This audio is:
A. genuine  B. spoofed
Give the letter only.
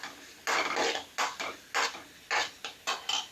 A